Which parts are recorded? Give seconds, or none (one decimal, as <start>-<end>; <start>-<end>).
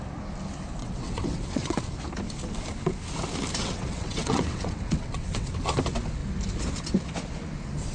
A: 0.0-0.8; 1.8-3.6; 5.5-7.9